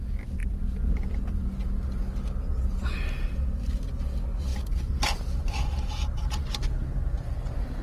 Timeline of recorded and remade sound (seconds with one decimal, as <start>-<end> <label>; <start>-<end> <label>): 0.0-4.5 recorded; 4.5-5.4 remade; 5.4-7.8 recorded